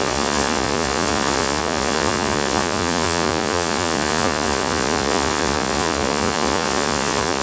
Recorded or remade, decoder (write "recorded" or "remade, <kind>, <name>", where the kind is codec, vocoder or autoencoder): remade, vocoder, Vocos